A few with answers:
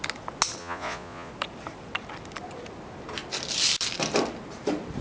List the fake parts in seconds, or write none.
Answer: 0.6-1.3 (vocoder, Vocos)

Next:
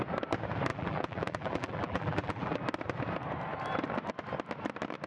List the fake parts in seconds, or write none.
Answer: 0.7-2.6 (vocoder, BigVGAN v2)

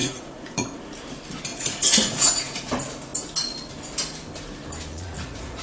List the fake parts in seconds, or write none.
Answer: 0.0-0.8 (vocoder, Vocos); 1.5-2.7; 4.9-5.6